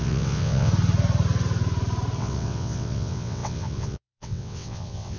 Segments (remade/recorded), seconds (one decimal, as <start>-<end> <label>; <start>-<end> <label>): 0.0-0.7 remade; 0.7-2.2 recorded; 2.2-5.2 remade